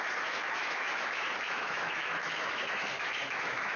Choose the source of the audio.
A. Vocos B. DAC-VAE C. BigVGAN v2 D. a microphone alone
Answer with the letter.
B